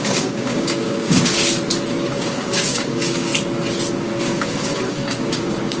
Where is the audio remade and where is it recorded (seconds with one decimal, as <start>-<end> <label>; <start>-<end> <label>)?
0.0-1.3 remade; 1.3-1.9 recorded; 1.9-3.3 remade; 3.3-3.9 recorded; 3.9-5.8 remade